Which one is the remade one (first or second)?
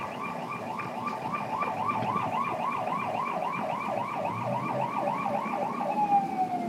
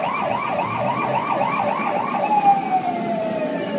second